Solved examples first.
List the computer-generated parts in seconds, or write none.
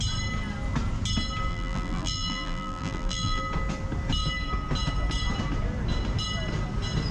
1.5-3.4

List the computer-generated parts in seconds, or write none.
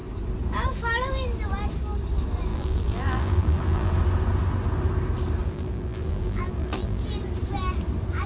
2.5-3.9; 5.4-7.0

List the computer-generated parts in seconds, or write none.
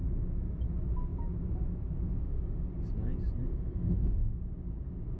2.2-2.7; 3.5-4.3